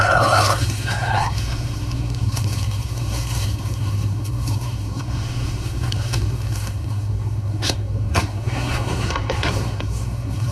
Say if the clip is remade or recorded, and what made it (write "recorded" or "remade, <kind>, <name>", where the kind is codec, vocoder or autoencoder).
remade, codec, SNAC